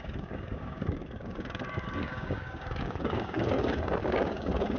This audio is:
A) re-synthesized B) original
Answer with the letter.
A